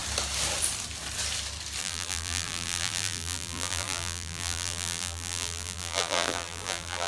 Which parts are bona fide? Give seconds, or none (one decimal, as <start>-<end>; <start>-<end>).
0.0-1.8